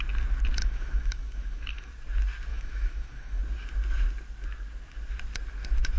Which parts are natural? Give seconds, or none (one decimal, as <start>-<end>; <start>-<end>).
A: 0.0-0.6; 1.9-2.5; 3.4-6.0